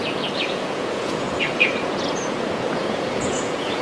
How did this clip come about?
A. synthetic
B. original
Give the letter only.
A